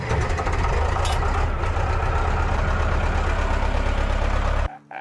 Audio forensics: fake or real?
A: real